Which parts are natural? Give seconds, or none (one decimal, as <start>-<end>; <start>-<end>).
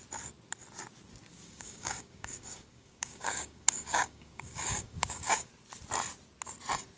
0.0-1.3; 5.5-7.0